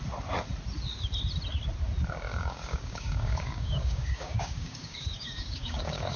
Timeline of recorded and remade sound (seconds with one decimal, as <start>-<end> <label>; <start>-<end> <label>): 0.0-2.3 recorded; 2.3-6.2 remade